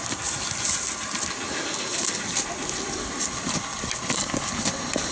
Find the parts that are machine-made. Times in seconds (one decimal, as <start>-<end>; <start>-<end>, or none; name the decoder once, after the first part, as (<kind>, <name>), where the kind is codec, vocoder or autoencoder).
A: none